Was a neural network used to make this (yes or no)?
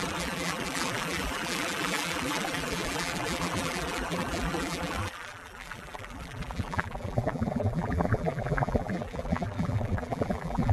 yes